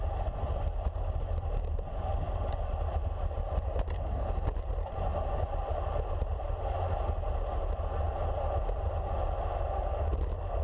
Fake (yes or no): no